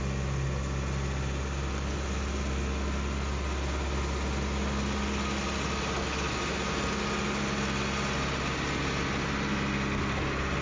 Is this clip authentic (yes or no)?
yes